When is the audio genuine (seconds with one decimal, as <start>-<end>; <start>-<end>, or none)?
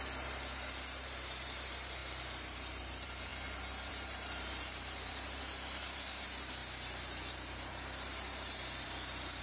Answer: 3.3-3.9